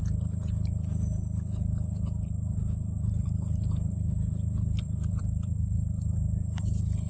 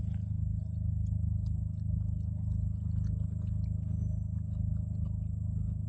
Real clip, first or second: second